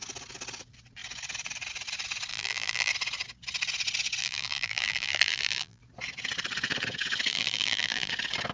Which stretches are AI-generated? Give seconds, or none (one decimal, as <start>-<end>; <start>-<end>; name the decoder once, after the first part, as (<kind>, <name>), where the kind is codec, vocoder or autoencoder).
2.3-2.9 (vocoder, BigVGAN v2); 4.2-5.8; 7.3-8.1